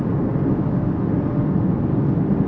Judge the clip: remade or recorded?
recorded